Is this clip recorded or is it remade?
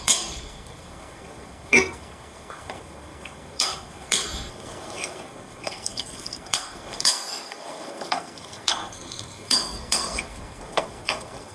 remade